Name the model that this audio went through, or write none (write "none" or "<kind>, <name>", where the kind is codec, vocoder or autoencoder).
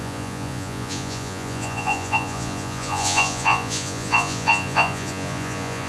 vocoder, Vocos